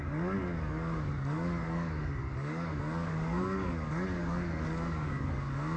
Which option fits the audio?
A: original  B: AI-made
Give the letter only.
B